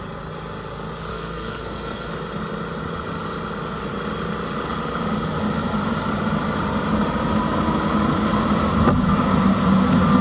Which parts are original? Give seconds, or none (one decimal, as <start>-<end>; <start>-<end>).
0.0-1.1; 2.1-10.2